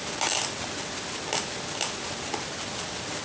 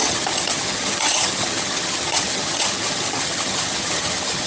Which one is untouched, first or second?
first